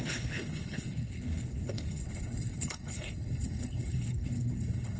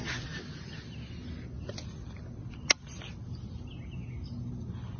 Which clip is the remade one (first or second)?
first